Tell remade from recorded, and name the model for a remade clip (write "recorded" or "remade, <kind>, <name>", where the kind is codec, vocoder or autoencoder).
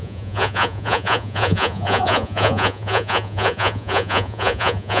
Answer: remade, vocoder, Vocos